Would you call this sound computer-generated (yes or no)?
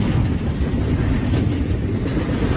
no